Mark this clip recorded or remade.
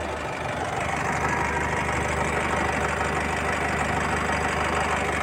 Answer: recorded